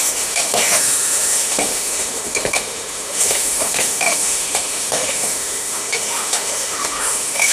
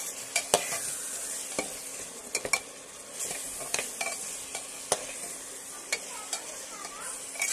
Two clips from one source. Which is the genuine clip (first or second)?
second